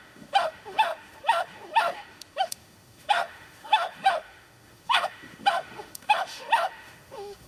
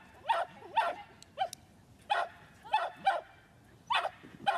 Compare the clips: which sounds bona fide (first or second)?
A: second